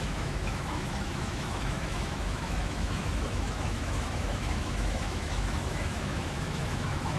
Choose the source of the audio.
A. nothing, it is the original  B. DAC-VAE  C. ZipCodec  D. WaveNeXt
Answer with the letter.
B